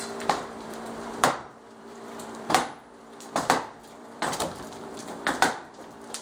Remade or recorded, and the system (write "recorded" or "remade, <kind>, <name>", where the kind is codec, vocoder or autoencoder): remade, vocoder, BigVGAN v2